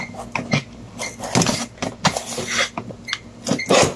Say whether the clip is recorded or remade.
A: recorded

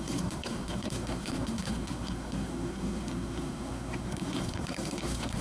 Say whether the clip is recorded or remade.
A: remade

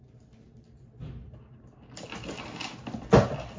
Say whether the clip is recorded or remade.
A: recorded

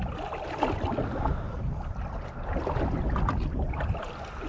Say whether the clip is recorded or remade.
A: recorded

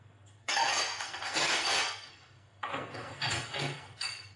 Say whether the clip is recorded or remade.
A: remade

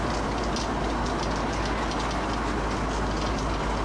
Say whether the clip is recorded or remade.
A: recorded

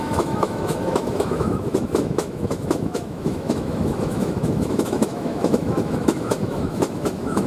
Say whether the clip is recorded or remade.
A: remade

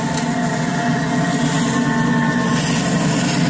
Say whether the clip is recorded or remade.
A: recorded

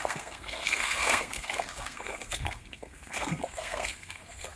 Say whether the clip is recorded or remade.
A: remade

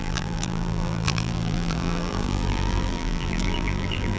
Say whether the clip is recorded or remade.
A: remade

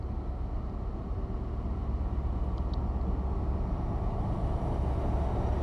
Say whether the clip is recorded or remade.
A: recorded